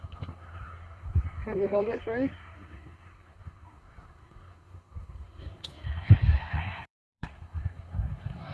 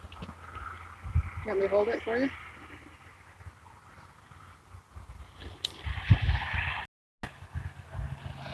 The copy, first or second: first